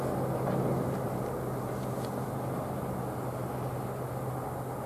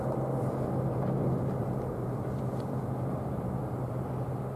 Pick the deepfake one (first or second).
second